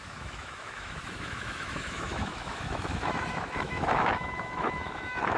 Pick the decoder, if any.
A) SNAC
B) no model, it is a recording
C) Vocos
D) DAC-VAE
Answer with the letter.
D